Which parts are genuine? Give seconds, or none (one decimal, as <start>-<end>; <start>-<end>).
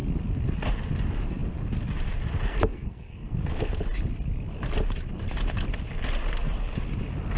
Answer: 0.0-2.5; 3.7-7.4